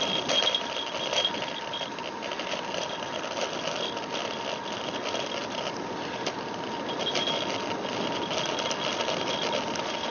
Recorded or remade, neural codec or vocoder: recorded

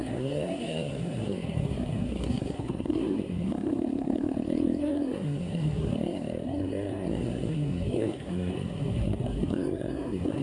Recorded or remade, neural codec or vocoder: remade, codec, SNAC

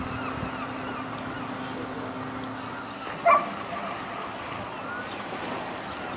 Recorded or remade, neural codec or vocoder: recorded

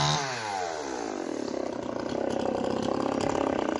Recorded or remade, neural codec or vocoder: recorded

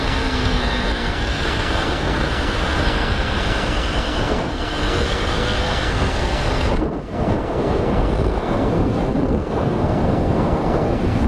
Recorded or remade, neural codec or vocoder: remade, codec, SNAC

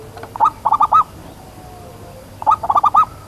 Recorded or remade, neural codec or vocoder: recorded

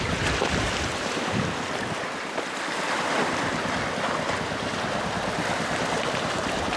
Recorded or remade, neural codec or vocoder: remade, vocoder, BigVGAN v2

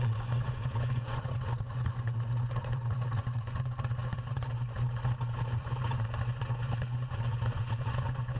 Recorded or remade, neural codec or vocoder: remade, vocoder, Vocos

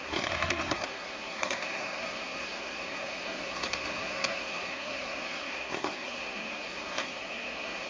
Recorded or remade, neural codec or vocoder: remade, codec, SNAC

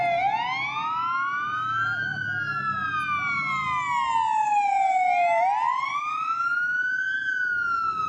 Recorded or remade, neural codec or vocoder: recorded